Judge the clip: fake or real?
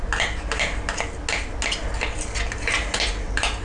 real